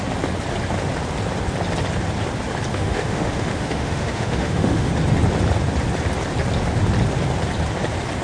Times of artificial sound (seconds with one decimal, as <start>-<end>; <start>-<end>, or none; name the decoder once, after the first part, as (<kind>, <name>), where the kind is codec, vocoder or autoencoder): 2.7-4.9 (autoencoder, DAC-VAE)